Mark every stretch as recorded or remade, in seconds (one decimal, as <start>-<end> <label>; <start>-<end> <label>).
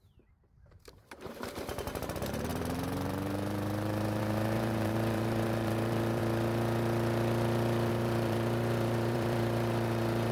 0.0-6.2 remade; 6.2-7.9 recorded; 7.9-10.3 remade